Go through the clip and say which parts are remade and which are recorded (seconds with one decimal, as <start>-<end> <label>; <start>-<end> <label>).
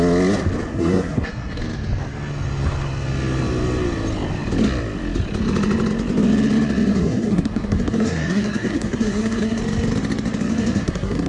0.0-0.7 recorded; 0.7-1.6 remade; 1.6-6.9 recorded; 6.9-9.6 remade; 9.6-10.5 recorded; 10.5-11.3 remade